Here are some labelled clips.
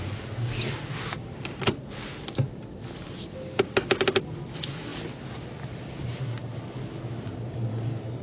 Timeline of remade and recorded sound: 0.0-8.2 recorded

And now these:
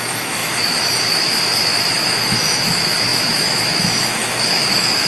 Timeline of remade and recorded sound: 0.0-5.1 remade

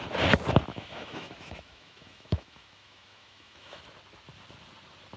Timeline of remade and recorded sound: 0.0-0.7 recorded; 0.7-3.8 remade; 3.8-5.2 recorded

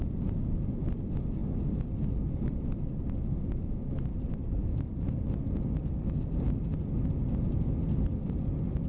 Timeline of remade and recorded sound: 0.0-8.9 recorded

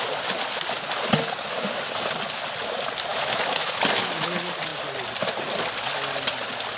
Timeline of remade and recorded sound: 0.0-3.1 recorded; 3.1-3.8 remade; 3.8-6.8 recorded

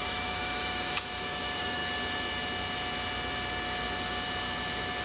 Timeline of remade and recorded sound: 0.0-1.8 remade; 1.8-5.0 recorded

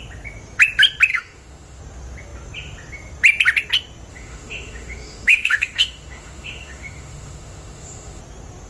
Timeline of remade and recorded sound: 0.0-1.1 recorded; 1.1-1.8 remade; 1.8-4.1 recorded; 4.1-8.2 remade; 8.2-8.7 recorded

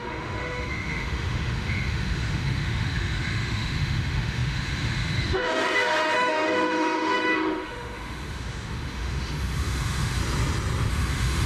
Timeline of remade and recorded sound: 0.0-10.2 remade; 10.2-10.9 recorded; 10.9-11.5 remade